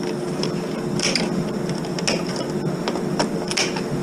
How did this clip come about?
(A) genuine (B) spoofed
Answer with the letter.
A